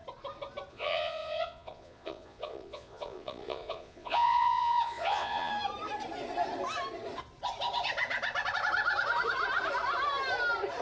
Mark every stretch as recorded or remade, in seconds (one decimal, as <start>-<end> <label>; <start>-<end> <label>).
0.0-0.7 recorded; 0.7-5.5 remade; 5.5-10.8 recorded